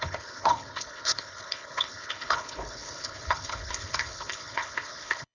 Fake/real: fake